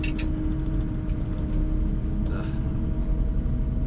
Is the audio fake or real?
real